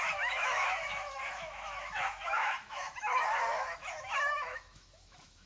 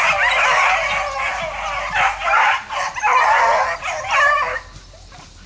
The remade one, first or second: first